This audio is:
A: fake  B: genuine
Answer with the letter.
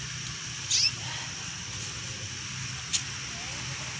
B